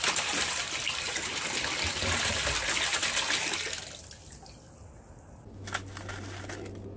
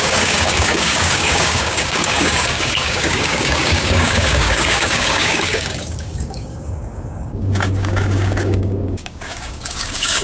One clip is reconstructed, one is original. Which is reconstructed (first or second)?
second